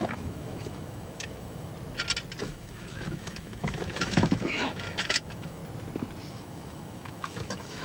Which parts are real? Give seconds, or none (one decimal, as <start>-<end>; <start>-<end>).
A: 1.7-2.4; 5.6-6.3